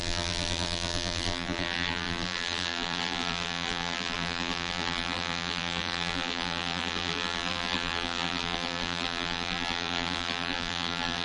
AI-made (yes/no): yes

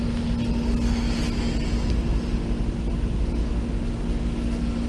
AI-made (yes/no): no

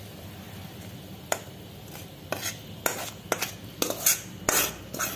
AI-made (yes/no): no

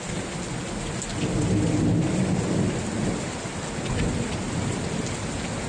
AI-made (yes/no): no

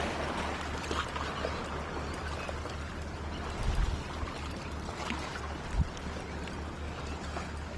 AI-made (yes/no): no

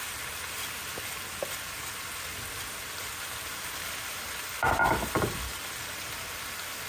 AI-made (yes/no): no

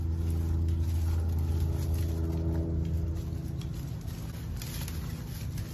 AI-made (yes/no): no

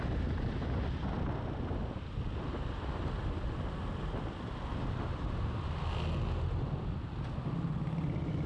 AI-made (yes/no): no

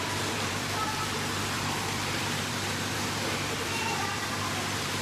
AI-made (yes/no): yes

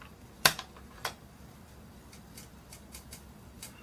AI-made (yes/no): yes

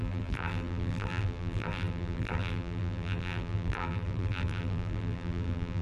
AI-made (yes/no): yes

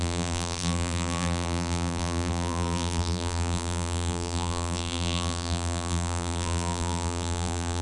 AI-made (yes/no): yes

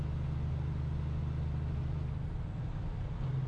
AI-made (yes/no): no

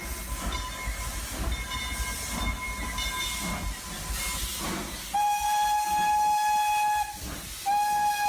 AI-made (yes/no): no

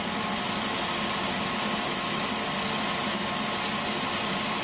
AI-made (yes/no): no